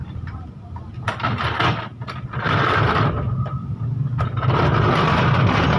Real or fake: real